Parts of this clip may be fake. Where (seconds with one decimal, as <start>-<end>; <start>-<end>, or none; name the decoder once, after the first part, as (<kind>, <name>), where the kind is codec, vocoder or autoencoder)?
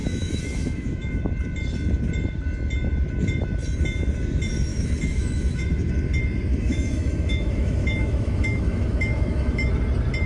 0.0-1.2 (autoencoder, DAC-VAE); 4.7-5.9; 6.5-9.7